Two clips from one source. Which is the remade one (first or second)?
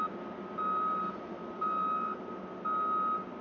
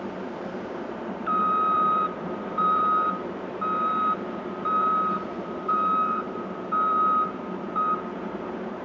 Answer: second